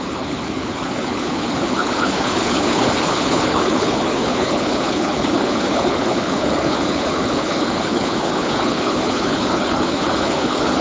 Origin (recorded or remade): remade